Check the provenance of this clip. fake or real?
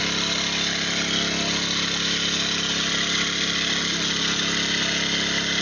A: real